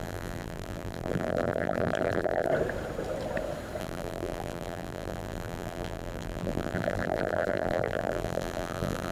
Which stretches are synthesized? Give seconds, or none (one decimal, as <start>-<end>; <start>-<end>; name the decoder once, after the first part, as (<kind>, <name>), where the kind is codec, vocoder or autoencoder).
0.0-2.5 (vocoder, BigVGAN v2); 3.8-9.1